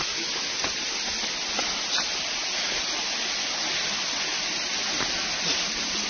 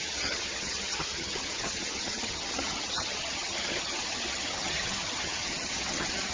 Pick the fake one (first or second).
second